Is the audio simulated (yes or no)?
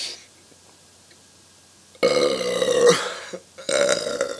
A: no